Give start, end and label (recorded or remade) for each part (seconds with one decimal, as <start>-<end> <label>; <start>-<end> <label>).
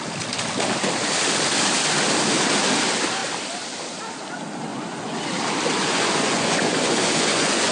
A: 0.0-4.7 recorded; 4.7-5.2 remade; 5.2-5.8 recorded; 5.8-7.7 remade